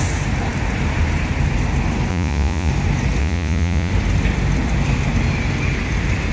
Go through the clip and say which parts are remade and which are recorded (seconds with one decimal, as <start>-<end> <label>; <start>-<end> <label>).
0.0-2.1 recorded; 2.1-2.7 remade; 2.7-3.2 recorded; 3.2-3.9 remade; 3.9-6.3 recorded